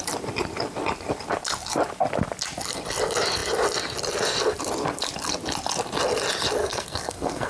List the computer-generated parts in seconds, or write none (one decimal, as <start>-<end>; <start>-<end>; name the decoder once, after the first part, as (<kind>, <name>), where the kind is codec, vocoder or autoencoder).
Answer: 6.6-7.5 (codec, SNAC)